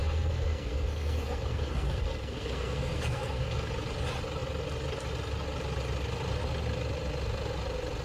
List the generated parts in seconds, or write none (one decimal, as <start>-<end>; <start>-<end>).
0.0-3.7